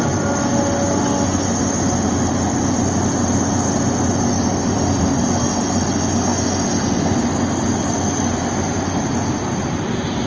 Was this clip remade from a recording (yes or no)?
no